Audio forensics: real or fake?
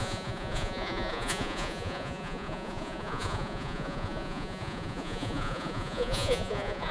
fake